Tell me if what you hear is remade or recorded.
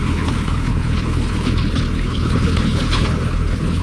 remade